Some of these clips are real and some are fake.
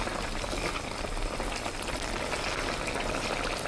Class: real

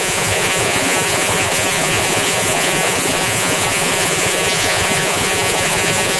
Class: fake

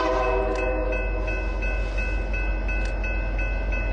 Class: real